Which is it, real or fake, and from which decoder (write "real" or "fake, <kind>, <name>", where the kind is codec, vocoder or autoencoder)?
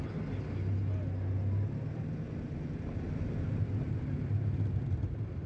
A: real